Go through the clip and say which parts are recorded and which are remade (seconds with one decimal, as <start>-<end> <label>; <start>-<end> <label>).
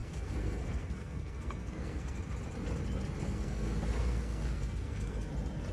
0.0-2.2 remade; 2.2-3.2 recorded; 3.2-5.3 remade; 5.3-5.7 recorded